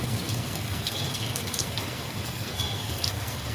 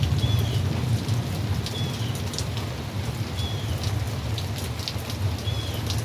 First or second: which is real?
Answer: second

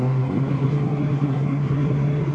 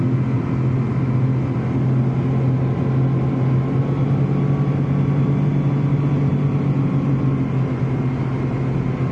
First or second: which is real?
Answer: second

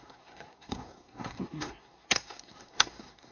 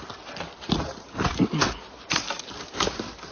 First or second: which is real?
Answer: second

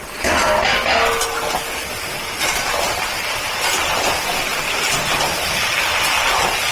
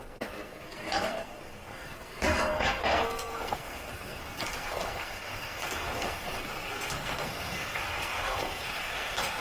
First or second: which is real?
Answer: first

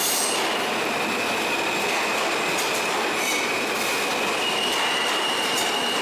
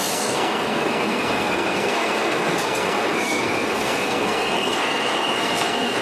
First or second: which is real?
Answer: first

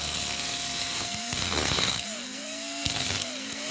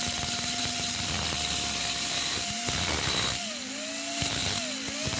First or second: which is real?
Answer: second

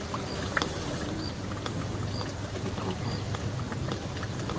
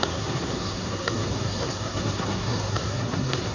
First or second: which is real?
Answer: first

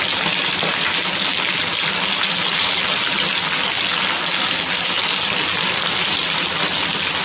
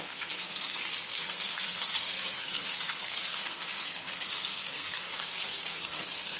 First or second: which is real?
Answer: first